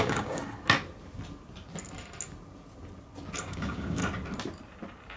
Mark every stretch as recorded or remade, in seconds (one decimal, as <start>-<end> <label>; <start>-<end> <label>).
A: 0.0-0.4 remade; 0.4-3.4 recorded; 3.4-4.0 remade; 4.0-5.2 recorded